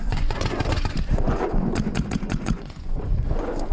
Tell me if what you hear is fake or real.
fake